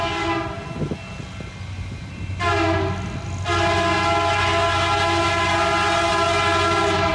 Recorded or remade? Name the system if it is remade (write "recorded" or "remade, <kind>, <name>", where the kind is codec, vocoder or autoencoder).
recorded